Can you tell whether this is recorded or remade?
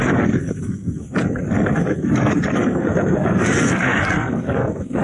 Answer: remade